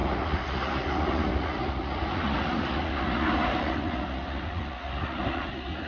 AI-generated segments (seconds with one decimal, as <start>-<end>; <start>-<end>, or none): 0.0-5.9